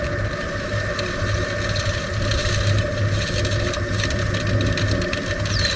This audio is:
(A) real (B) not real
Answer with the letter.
A